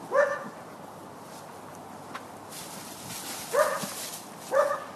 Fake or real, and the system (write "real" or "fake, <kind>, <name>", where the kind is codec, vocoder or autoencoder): real